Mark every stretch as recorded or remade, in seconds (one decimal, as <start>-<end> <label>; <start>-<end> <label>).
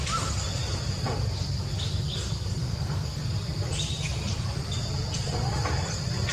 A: 0.0-2.6 recorded; 2.6-3.2 remade; 3.2-6.3 recorded